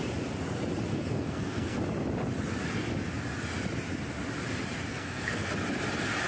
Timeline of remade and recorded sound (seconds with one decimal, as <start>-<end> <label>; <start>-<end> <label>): 0.0-0.9 recorded; 0.9-1.8 remade; 1.8-4.9 recorded; 4.9-5.5 remade; 5.5-6.3 recorded